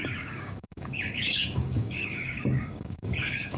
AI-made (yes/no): yes